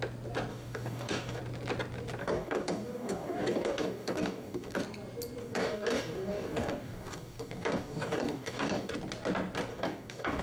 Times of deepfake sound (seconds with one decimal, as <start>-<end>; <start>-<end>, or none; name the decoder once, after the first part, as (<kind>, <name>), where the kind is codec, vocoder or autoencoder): 0.5-1.4 (codec, DAC); 2.2-4.8; 5.4-8.9; 9.7-10.4